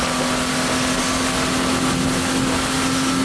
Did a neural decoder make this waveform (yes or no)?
no